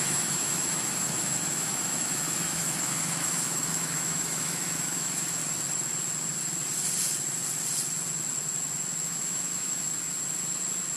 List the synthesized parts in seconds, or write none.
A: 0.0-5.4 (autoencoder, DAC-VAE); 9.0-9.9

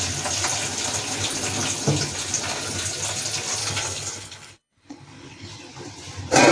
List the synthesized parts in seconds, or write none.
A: 3.6-5.5 (codec, HILCodec)

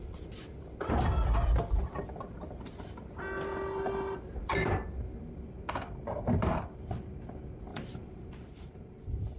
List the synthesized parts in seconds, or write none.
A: 7.7-9.0 (vocoder, BigVGAN v2)